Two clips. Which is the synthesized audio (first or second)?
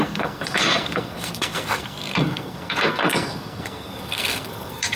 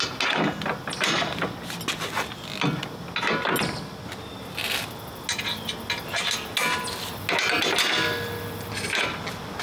first